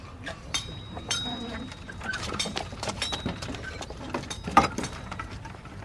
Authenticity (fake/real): fake